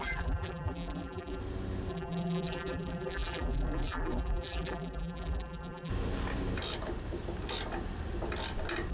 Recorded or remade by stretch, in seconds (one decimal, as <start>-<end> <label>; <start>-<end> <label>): 0.0-1.4 remade; 1.4-1.9 recorded; 1.9-5.9 remade; 5.9-8.9 recorded